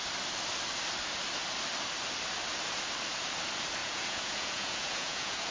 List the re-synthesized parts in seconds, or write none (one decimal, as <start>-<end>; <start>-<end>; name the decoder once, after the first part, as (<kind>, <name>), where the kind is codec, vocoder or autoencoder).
3.8-5.5 (vocoder, Vocos)